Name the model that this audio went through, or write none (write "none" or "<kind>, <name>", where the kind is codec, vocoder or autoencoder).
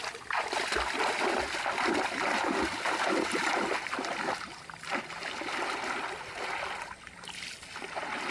none